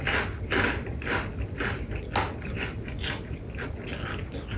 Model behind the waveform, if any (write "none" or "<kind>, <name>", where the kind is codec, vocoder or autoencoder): none